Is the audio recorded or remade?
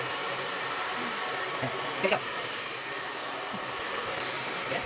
remade